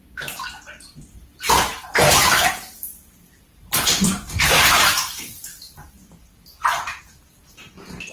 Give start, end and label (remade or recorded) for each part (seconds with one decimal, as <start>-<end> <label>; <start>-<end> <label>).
0.0-1.3 recorded; 1.3-2.5 remade; 2.5-2.9 recorded; 2.9-7.0 remade; 7.0-8.1 recorded